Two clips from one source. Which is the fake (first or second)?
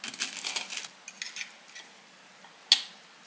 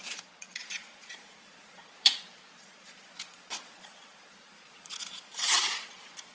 second